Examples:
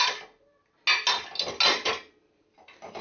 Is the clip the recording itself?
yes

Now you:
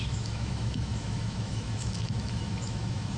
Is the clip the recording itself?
no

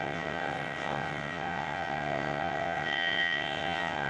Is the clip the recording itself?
no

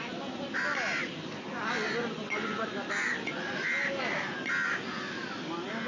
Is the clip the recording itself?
yes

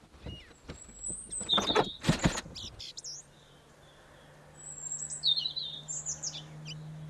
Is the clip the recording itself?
yes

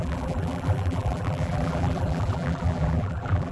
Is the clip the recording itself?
no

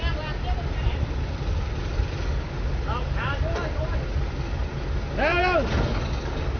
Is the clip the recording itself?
yes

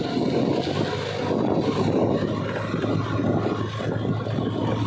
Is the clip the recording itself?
yes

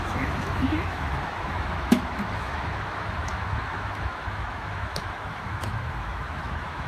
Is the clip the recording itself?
no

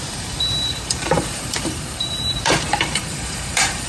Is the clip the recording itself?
no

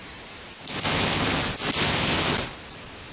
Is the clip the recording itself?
yes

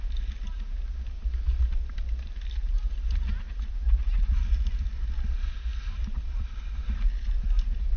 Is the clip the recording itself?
yes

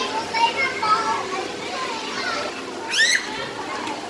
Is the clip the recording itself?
yes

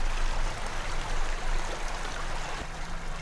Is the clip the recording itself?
yes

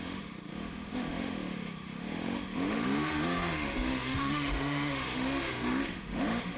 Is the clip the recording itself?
no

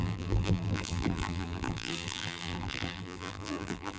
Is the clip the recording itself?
no